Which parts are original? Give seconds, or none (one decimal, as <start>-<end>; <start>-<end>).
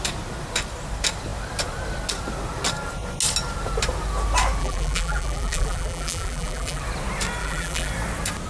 0.0-4.6; 6.8-7.4; 7.9-8.5